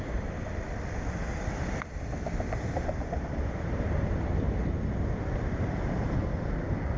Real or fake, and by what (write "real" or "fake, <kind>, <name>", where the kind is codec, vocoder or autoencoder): fake, vocoder, BigVGAN v2